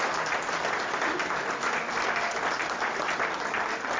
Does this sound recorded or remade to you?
recorded